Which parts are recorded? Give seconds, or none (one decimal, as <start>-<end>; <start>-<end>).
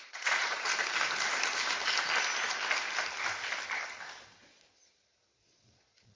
0.7-4.4